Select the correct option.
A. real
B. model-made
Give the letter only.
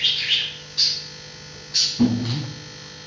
A